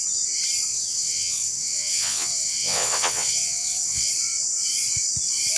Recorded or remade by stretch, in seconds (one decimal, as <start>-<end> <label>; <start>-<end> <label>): 0.0-0.7 recorded; 0.7-4.1 remade; 4.1-5.6 recorded